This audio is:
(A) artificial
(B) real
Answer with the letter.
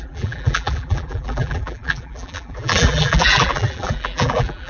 A